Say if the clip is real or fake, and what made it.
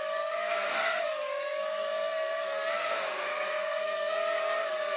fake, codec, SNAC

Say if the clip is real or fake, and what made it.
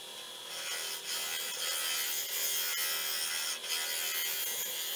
real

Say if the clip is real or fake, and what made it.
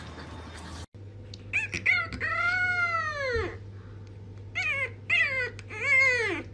real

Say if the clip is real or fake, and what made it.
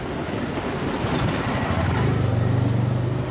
real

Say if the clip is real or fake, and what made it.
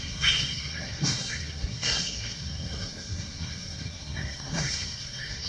fake, codec, SNAC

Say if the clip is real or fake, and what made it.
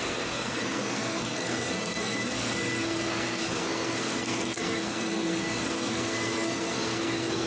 fake, codec, SNAC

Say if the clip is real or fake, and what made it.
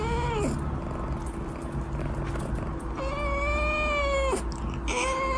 real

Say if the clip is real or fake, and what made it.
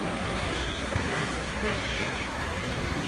fake, codec, SNAC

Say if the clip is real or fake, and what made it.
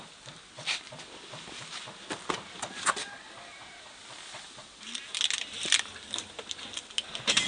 real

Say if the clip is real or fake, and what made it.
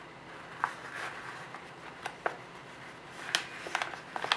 real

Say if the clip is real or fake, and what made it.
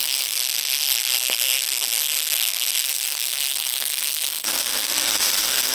fake, codec, SNAC